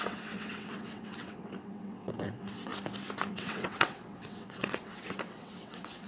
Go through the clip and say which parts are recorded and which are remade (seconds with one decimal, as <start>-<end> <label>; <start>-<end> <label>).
0.0-2.7 remade; 2.7-3.3 recorded; 3.3-6.1 remade